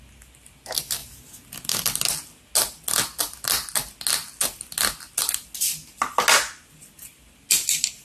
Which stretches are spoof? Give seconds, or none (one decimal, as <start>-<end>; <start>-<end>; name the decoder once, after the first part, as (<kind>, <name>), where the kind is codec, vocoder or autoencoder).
none